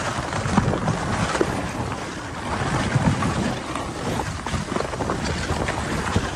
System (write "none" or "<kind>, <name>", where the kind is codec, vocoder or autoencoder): none